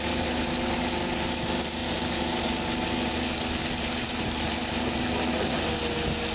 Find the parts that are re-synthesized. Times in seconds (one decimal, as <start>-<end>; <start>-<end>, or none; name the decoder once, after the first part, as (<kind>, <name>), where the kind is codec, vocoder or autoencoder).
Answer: none